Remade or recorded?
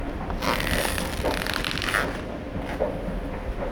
recorded